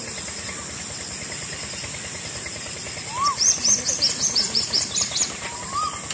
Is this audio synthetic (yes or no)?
yes